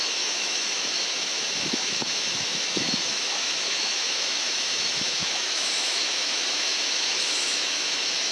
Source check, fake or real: fake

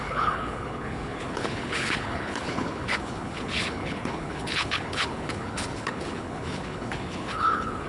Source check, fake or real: fake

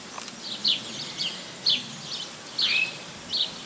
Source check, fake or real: real